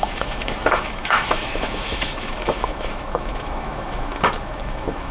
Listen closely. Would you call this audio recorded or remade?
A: remade